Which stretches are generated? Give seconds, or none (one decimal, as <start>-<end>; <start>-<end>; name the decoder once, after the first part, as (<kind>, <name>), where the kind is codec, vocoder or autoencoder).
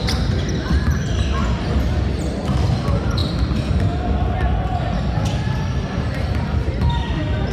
none